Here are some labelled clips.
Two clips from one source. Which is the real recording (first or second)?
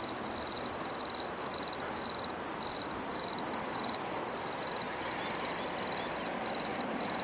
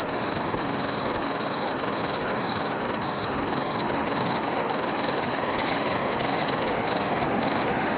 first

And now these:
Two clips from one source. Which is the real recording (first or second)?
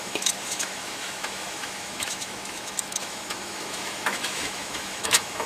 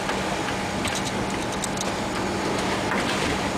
second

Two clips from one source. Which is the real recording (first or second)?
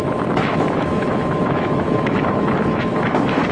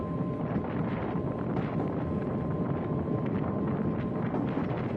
second